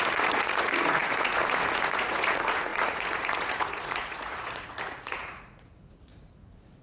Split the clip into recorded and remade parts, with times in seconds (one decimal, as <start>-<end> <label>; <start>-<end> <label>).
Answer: 0.0-6.8 remade